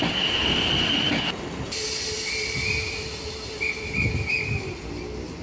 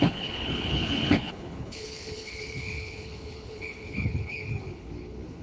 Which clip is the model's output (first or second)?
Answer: second